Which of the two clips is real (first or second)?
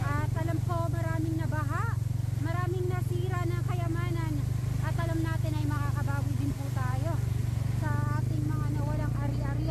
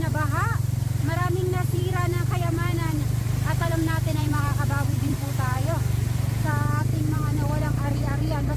first